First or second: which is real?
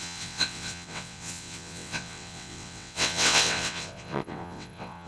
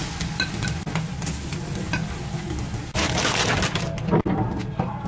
second